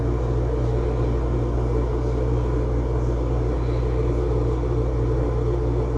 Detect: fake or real real